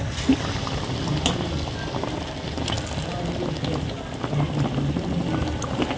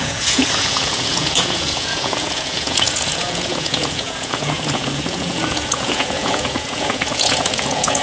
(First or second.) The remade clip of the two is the second